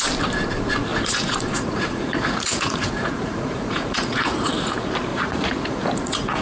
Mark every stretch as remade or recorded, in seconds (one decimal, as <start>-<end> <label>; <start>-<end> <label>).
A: 0.0-0.9 recorded; 0.9-4.5 remade; 4.5-5.1 recorded; 5.1-6.4 remade